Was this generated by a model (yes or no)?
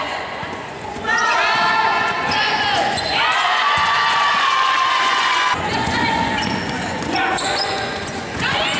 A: yes